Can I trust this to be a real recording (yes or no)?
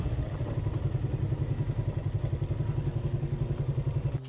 yes